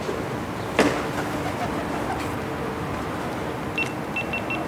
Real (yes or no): yes